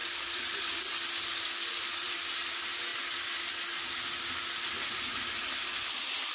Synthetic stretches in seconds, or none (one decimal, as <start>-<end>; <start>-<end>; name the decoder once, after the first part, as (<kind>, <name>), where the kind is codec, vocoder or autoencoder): none